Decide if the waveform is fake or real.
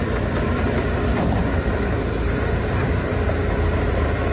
fake